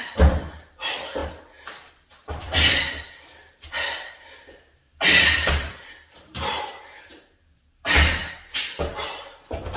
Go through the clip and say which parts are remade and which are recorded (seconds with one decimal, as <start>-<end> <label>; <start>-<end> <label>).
0.0-7.1 remade; 7.1-8.2 recorded; 8.2-9.8 remade